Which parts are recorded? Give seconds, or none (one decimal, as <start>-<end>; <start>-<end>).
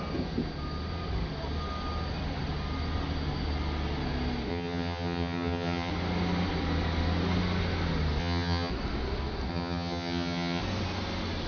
0.0-4.5; 5.9-8.2; 8.7-9.5; 10.6-11.5